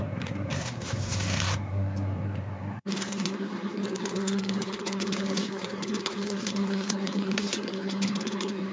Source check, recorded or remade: remade